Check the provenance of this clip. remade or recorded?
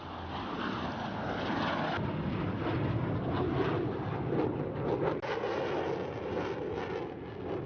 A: recorded